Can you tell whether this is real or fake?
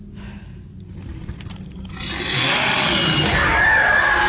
real